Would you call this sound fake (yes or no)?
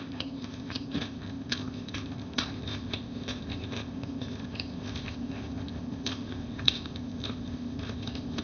yes